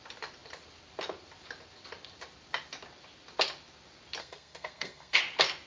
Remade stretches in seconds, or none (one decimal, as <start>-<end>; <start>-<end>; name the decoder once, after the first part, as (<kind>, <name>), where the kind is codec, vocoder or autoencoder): 4.2-5.2 (codec, SNAC)